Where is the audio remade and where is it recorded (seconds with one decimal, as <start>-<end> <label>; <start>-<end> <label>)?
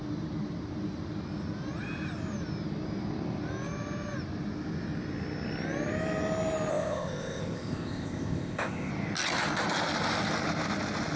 0.0-6.7 recorded; 6.7-8.9 remade; 8.9-11.2 recorded